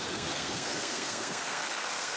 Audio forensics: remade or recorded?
remade